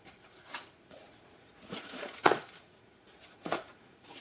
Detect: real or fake fake